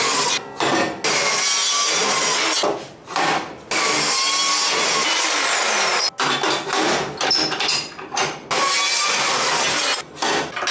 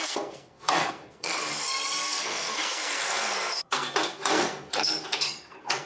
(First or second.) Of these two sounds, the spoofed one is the second